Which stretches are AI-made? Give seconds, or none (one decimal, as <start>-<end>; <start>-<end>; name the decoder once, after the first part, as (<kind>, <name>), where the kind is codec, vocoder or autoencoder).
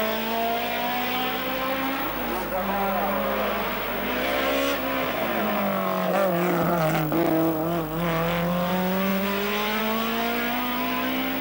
none